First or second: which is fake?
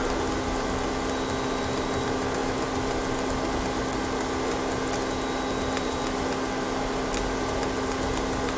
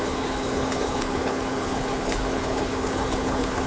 second